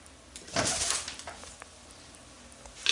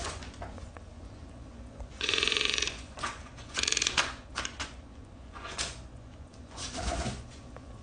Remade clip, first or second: second